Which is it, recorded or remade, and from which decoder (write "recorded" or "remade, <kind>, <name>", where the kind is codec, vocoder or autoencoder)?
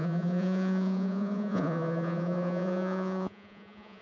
remade, vocoder, Vocos